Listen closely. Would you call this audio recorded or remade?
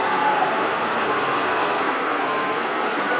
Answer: remade